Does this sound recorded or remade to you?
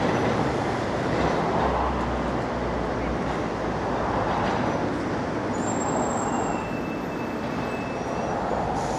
recorded